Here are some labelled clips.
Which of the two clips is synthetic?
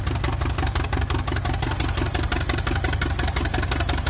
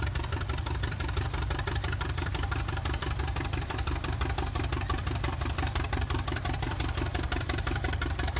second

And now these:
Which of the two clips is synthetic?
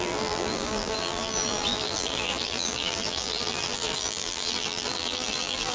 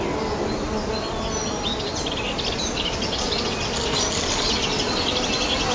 first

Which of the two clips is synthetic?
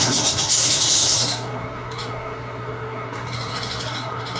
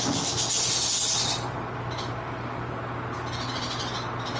first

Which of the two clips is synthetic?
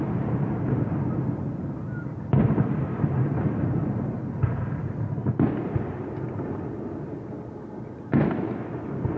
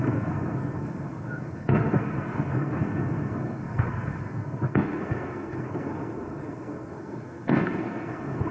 second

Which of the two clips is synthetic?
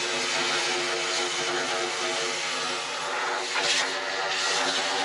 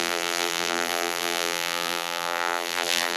second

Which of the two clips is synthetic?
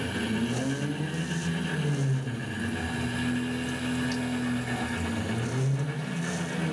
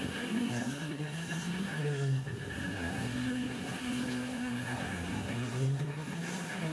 second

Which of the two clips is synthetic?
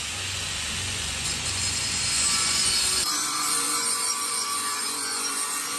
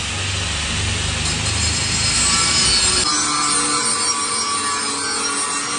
first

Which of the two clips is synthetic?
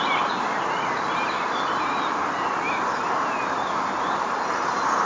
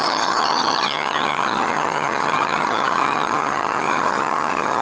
second